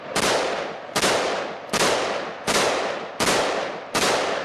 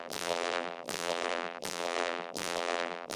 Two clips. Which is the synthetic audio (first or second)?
second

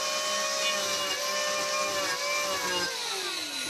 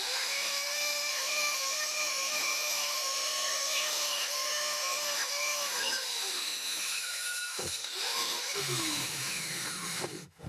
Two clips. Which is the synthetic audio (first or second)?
second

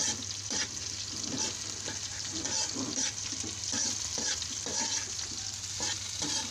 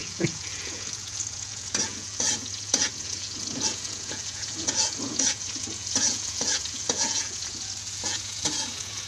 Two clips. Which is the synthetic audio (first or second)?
second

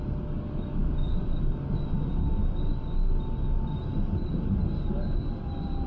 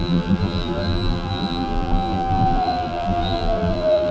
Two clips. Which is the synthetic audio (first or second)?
second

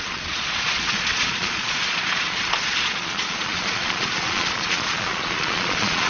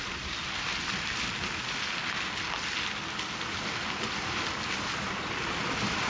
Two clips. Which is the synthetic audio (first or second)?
first